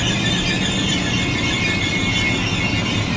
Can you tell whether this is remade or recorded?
recorded